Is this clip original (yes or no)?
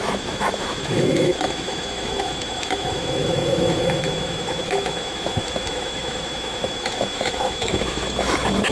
no